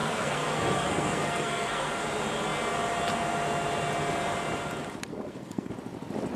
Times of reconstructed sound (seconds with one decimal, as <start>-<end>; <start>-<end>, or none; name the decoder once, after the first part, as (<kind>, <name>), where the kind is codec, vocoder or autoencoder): 0.0-2.0 (codec, SNAC); 5.1-5.7